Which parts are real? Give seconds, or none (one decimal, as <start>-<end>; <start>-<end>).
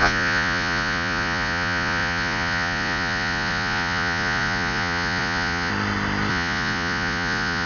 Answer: 5.7-6.3